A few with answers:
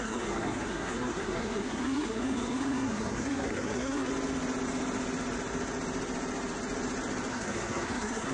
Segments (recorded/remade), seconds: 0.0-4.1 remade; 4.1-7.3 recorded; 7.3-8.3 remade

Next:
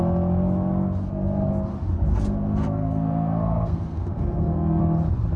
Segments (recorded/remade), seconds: 0.0-1.0 recorded; 1.0-1.5 remade; 1.5-2.1 recorded; 2.1-4.8 remade; 4.8-5.4 recorded

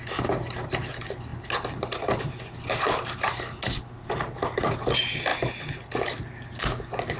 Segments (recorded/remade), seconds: 0.0-7.2 recorded

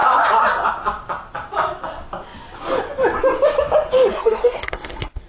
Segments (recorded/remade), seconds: 0.0-4.1 recorded; 4.1-5.3 remade